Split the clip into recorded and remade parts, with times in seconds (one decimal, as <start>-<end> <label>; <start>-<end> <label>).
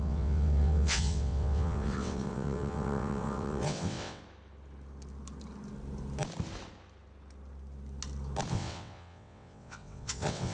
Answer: 0.0-4.2 remade; 4.2-8.5 recorded; 8.5-10.5 remade